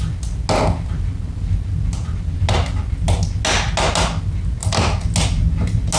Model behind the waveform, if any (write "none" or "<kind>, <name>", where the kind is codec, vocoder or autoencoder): none